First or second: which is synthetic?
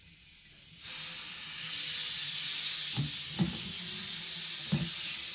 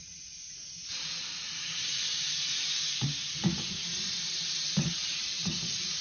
second